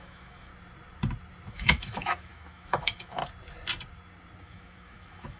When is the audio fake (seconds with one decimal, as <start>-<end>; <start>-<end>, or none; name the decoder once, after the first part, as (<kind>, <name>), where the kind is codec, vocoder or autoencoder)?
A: 0.0-0.5 (autoencoder, DAC-VAE); 1.5-3.2; 4.4-5.4